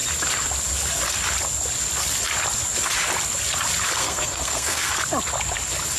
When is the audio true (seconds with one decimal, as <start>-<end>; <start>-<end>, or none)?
0.0-4.0; 4.9-6.0